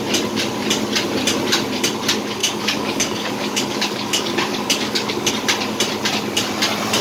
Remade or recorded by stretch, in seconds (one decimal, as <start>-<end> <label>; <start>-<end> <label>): 0.0-2.4 recorded; 2.4-5.3 remade; 5.3-7.0 recorded